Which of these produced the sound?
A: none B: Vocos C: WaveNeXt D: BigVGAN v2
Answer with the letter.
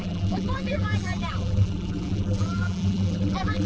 D